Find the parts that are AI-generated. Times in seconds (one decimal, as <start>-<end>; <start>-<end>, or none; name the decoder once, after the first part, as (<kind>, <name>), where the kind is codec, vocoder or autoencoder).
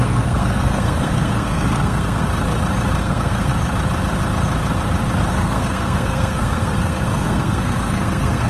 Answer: 0.0-2.3 (codec, SNAC); 3.0-3.5; 5.3-8.5